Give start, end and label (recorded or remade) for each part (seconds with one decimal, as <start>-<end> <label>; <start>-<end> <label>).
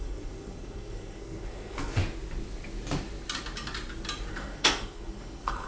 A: 0.0-2.0 remade; 2.0-4.3 recorded; 4.3-5.7 remade